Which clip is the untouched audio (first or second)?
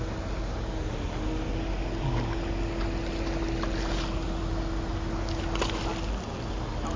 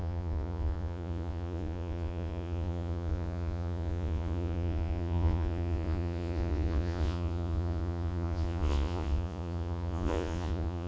first